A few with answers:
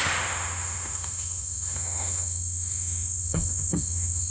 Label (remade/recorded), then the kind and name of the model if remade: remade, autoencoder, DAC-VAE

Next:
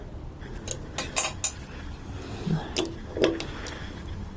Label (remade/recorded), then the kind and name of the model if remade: recorded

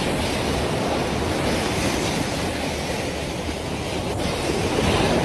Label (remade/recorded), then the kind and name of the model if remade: recorded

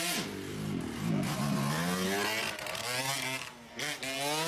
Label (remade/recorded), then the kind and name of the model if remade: recorded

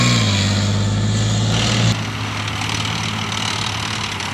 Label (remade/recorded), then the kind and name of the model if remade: recorded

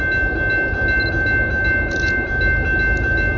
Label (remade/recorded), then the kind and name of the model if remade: recorded